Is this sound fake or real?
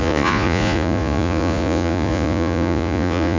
fake